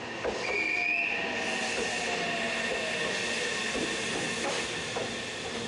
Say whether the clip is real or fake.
real